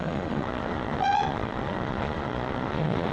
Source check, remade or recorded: remade